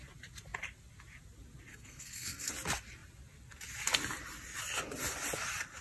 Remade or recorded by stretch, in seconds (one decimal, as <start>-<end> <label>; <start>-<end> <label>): 0.0-1.7 recorded; 1.7-2.5 remade; 2.5-5.8 recorded